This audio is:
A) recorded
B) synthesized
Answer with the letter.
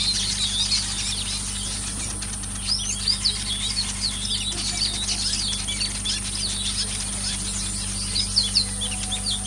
A